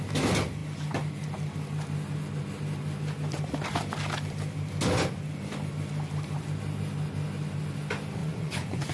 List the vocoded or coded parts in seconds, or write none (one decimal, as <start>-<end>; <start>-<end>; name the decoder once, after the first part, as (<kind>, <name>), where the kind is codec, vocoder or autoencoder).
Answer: 8.2-8.9 (vocoder, Vocos)